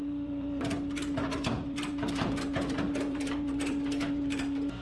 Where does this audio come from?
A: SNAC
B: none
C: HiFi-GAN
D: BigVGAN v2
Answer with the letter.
D